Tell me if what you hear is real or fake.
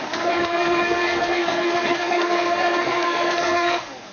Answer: fake